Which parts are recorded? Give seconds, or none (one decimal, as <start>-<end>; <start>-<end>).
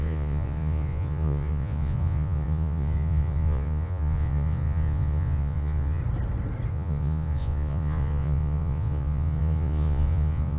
6.0-6.7